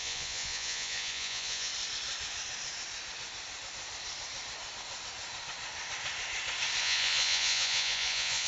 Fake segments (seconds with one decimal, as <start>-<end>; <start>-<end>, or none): 0.0-1.7; 6.8-8.5